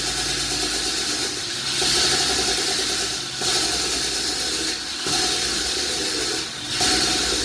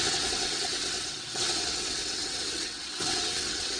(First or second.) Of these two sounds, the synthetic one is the second